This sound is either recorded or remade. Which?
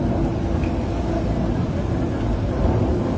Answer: recorded